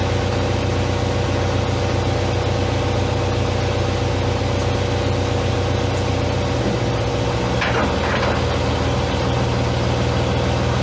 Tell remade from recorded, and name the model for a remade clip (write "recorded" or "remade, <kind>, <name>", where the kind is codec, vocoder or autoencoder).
recorded